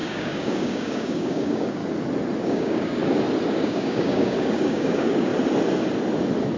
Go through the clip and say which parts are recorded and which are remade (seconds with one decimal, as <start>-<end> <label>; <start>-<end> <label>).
0.0-1.8 remade; 1.8-2.4 recorded; 2.4-3.0 remade; 3.0-3.5 recorded; 3.5-5.3 remade; 5.3-6.6 recorded